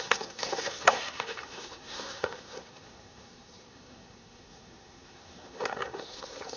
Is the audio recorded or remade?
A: remade